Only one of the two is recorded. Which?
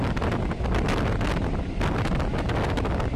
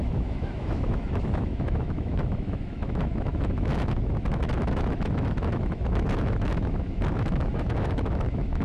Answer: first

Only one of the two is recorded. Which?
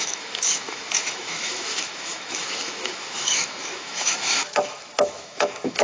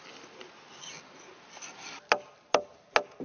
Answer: second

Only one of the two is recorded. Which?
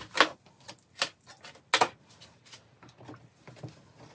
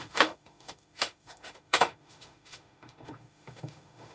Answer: first